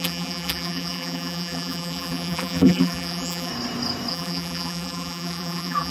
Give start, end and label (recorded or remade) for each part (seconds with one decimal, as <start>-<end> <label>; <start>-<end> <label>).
0.0-3.5 remade; 3.5-4.1 recorded; 4.1-5.9 remade